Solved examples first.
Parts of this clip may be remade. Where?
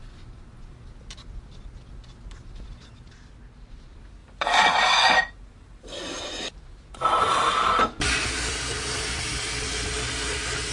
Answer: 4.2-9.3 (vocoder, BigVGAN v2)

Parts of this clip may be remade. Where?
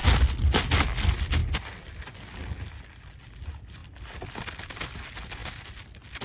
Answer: none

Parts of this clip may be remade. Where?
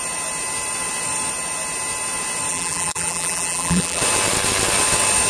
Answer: 2.5-4.0 (vocoder, BigVGAN v2)